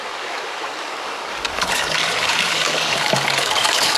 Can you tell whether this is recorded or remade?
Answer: remade